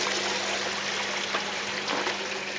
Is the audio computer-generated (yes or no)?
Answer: no